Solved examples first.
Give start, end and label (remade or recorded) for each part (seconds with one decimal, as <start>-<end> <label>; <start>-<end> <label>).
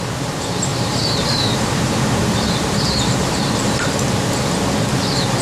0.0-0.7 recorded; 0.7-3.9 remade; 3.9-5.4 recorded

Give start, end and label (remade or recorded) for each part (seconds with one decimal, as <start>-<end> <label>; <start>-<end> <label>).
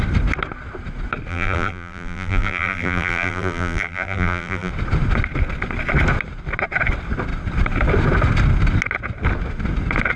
0.0-1.3 recorded; 1.3-4.7 remade; 4.7-10.2 recorded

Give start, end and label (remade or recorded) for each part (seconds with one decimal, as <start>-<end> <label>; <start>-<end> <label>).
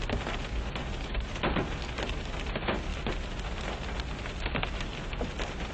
0.0-5.7 recorded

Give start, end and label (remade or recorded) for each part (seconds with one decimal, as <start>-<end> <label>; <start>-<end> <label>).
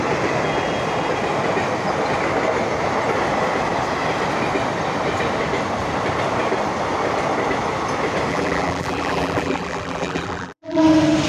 0.0-8.3 recorded; 8.3-10.8 remade; 10.8-11.3 recorded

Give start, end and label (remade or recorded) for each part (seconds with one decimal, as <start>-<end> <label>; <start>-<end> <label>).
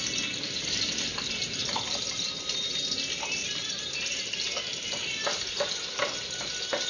0.0-3.4 recorded; 3.4-4.0 remade; 4.0-4.7 recorded; 4.7-5.5 remade; 5.5-6.9 recorded